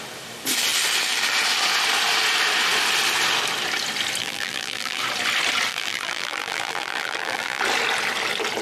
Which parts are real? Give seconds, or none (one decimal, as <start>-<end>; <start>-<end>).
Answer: 0.0-4.2; 5.0-5.7; 7.6-8.6

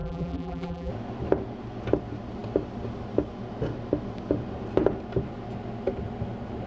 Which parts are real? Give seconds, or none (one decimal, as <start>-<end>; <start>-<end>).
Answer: 0.9-6.7

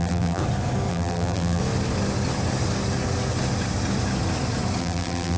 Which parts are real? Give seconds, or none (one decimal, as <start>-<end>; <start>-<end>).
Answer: 0.4-0.9; 1.6-4.8

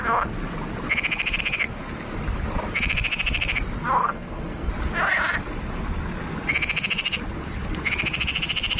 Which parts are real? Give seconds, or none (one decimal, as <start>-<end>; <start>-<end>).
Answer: 0.0-4.0; 4.7-8.8

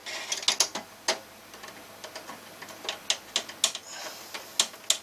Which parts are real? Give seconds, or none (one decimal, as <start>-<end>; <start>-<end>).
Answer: 0.0-5.0

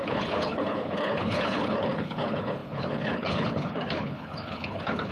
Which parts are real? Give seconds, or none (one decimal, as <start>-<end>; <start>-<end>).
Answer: none